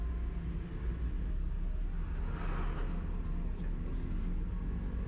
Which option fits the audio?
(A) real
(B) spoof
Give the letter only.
A